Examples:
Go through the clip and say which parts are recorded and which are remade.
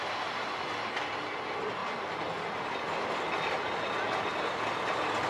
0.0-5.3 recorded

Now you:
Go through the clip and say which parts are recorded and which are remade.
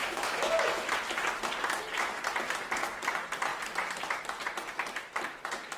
0.0-0.9 remade; 0.9-5.8 recorded